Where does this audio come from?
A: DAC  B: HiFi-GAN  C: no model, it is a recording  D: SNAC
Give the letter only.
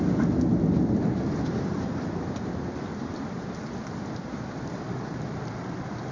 C